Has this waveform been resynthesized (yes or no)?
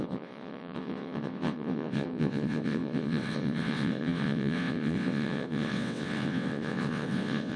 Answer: yes